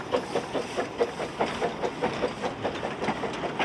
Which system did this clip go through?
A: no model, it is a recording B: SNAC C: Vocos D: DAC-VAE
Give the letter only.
A